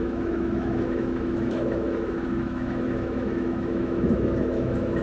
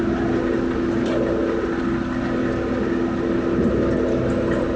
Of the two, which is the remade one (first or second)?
first